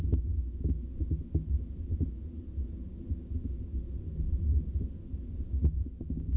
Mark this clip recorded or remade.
recorded